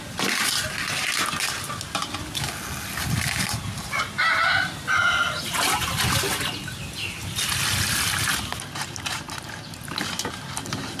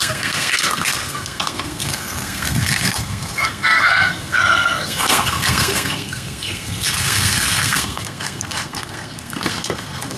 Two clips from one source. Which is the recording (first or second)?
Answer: first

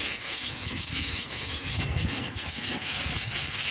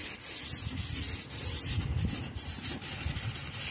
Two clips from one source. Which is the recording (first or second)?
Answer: second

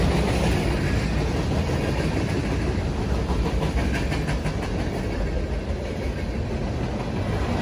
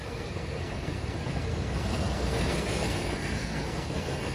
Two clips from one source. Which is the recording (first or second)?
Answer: first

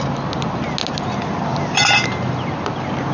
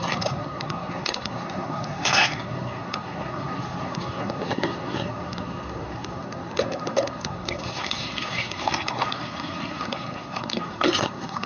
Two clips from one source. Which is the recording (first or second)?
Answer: first